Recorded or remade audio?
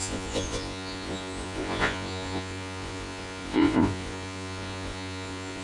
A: remade